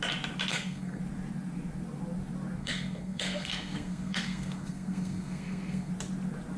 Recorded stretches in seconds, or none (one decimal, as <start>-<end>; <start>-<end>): 0.0-0.5; 1.0-2.6; 5.9-6.6